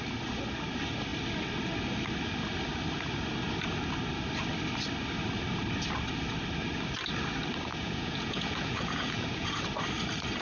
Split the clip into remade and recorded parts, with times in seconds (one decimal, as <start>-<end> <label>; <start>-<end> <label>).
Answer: 0.0-7.7 recorded; 7.7-9.6 remade; 9.6-10.4 recorded